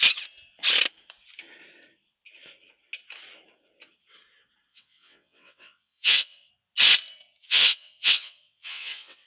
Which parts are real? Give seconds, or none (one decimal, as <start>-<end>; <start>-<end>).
0.0-4.7; 6.5-7.4